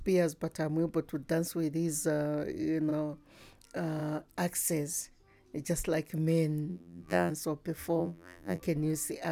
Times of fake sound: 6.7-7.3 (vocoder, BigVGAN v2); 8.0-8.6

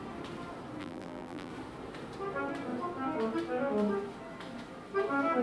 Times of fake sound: 0.8-1.5 (vocoder, BigVGAN v2)

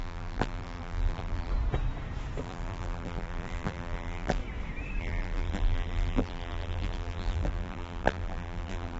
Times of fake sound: 0.0-1.5 (vocoder, BigVGAN v2); 2.4-4.4; 5.0-9.0

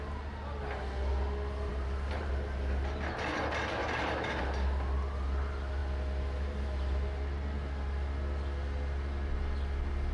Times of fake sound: 1.7-2.3 (vocoder, BigVGAN v2); 3.8-4.4

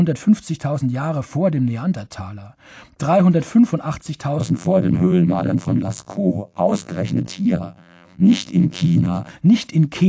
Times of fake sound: 4.4-9.3 (vocoder, BigVGAN v2)

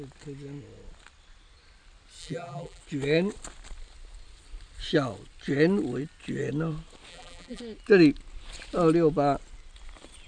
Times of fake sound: 2.2-2.8 (vocoder, BigVGAN v2); 7.1-7.6